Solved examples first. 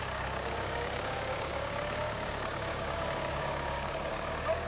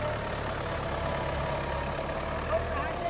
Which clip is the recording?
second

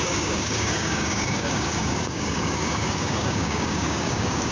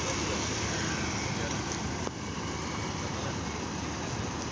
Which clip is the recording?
second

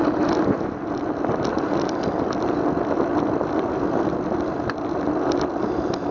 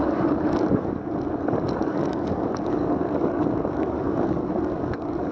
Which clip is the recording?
first